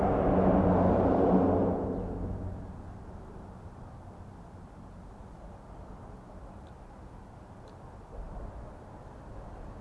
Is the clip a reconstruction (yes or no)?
no